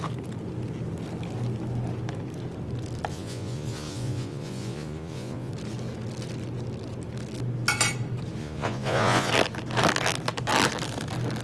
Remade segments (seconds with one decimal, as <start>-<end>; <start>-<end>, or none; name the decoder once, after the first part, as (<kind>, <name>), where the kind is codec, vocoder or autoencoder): 3.1-5.5 (vocoder, Vocos); 8.4-9.3